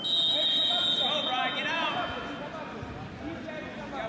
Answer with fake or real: real